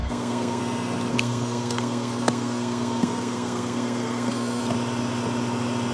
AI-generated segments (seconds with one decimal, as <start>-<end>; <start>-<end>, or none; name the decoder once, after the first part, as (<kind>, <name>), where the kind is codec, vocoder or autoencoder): 0.0-0.6 (codec, SNAC); 1.1-4.6